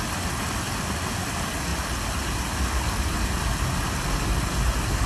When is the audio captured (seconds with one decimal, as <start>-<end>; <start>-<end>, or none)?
0.0-5.1